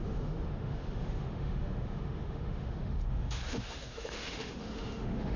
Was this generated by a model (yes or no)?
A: yes